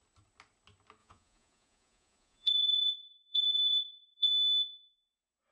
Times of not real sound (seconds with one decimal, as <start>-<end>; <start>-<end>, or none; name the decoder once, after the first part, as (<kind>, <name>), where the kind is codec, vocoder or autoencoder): 1.0-4.3 (vocoder, Vocos)